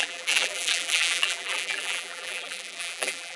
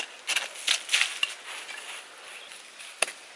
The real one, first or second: second